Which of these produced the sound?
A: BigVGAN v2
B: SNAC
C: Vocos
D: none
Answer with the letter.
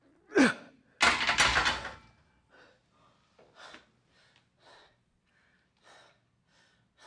D